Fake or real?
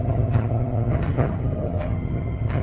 fake